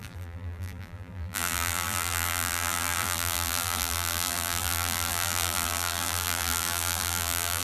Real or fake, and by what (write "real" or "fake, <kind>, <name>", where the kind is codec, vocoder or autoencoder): fake, vocoder, BigVGAN v2